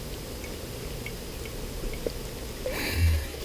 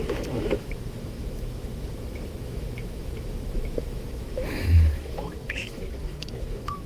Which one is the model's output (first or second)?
second